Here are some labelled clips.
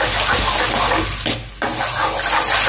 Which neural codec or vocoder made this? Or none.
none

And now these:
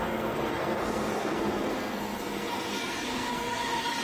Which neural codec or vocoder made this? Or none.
codec, SNAC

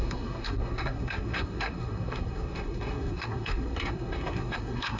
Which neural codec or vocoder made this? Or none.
codec, SNAC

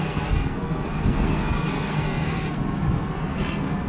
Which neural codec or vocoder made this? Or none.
codec, SNAC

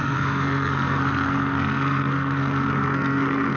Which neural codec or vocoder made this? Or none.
codec, SNAC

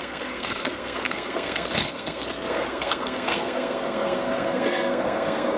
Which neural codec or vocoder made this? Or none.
codec, SNAC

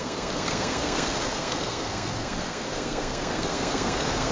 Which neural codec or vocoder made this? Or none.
codec, SNAC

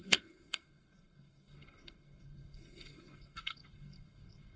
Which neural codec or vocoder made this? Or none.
codec, SNAC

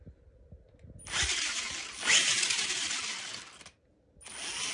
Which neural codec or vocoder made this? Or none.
none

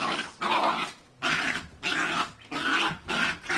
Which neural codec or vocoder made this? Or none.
none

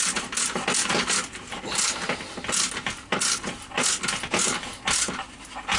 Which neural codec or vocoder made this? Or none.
none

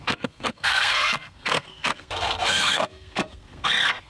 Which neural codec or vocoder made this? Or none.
codec, SNAC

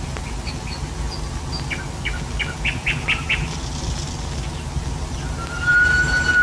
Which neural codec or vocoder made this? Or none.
none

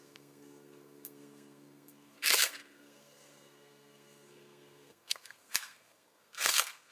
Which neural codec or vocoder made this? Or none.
codec, SNAC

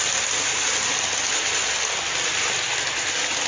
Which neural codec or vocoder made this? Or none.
none